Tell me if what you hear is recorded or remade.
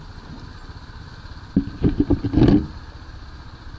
recorded